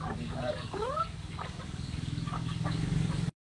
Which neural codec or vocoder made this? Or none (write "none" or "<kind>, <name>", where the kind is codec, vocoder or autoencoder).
codec, DAC